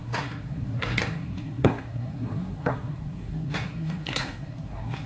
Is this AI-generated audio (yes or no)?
yes